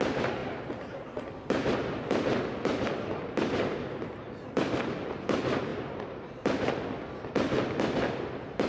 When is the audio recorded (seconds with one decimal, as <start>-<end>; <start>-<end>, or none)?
0.0-0.4; 4.4-5.7; 6.7-8.7